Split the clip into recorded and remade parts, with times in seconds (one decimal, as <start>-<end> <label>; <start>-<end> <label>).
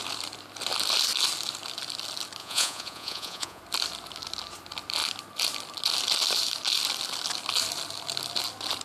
0.0-2.4 recorded; 2.4-3.6 remade; 3.6-8.8 recorded